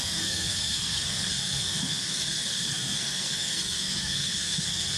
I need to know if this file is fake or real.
fake